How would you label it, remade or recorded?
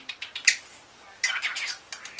recorded